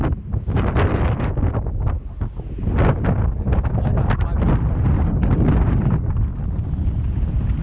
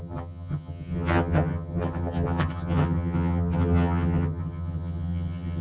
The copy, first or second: second